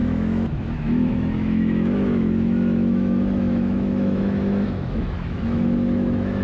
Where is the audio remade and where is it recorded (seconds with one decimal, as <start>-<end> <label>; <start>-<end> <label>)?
0.0-6.4 remade